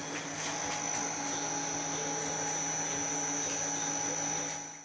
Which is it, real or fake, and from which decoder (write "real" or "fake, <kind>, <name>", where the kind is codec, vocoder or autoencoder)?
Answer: real